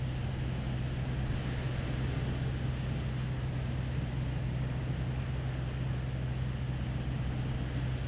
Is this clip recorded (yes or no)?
yes